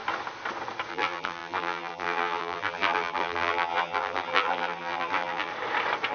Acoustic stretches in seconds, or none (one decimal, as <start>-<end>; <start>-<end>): 0.0-0.9; 5.5-6.1